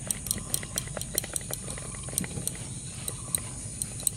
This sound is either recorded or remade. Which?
recorded